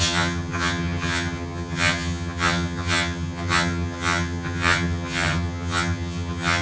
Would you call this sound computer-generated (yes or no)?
yes